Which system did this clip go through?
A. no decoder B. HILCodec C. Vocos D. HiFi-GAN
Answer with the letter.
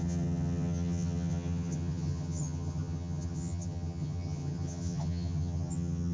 D